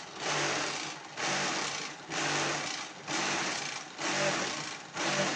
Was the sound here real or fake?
real